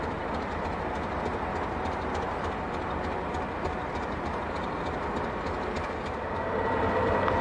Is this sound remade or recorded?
recorded